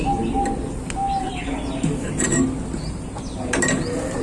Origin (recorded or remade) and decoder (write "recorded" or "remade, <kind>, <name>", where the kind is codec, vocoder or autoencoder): recorded